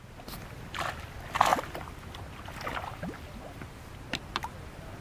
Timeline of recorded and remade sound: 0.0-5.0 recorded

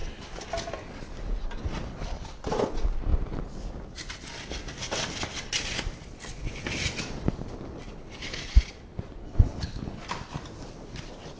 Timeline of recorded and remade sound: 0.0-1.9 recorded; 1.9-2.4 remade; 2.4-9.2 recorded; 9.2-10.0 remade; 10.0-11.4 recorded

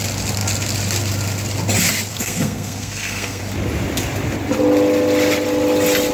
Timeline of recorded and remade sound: 0.0-2.1 recorded; 2.1-3.4 remade; 3.4-6.1 recorded

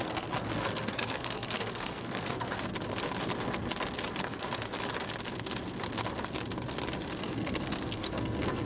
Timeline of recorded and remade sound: 0.0-2.7 remade; 2.7-7.2 recorded; 7.2-8.7 remade